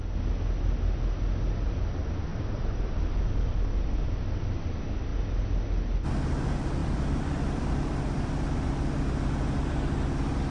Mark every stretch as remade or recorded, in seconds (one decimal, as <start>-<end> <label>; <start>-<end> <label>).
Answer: 0.0-2.3 recorded; 2.3-2.9 remade; 2.9-6.8 recorded; 6.8-8.7 remade; 8.7-10.5 recorded